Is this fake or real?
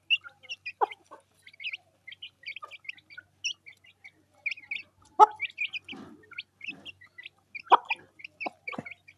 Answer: real